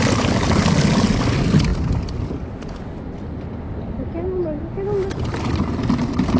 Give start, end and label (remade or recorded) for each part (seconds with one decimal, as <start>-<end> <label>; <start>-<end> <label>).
0.0-6.4 recorded

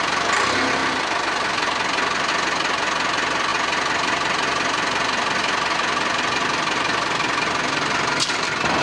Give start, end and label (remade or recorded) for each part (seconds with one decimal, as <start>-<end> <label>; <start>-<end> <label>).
0.0-8.8 recorded

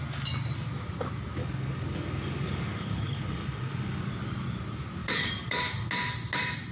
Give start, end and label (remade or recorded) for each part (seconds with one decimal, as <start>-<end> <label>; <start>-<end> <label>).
0.0-1.4 recorded; 1.4-4.1 remade; 4.1-5.0 recorded; 5.0-5.6 remade; 5.6-6.7 recorded

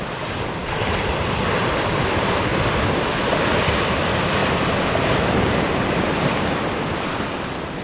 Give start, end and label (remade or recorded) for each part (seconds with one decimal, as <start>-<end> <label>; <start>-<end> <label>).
0.0-2.5 remade; 2.5-3.5 recorded; 3.5-7.8 remade